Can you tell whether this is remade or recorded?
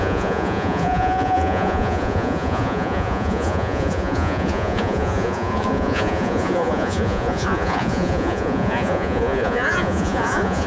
remade